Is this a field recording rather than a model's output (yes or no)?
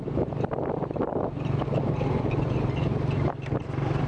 no